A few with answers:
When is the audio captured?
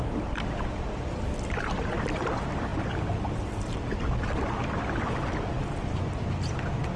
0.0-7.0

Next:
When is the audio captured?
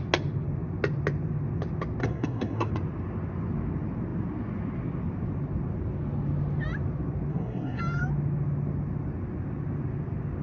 0.0-2.0; 2.7-7.3; 7.8-10.4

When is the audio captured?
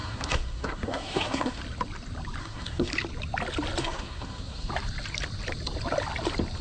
1.6-2.4; 2.9-3.8; 4.7-6.6